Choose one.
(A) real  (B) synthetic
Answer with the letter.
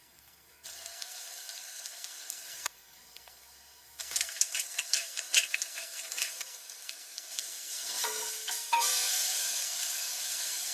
B